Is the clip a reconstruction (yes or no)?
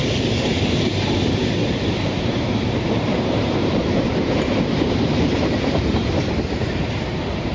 yes